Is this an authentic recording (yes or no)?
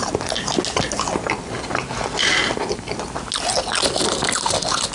yes